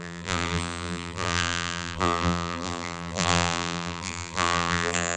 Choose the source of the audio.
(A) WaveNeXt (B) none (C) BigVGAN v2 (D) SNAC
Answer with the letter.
C